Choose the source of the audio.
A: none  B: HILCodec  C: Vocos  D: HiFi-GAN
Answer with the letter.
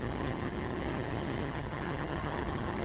D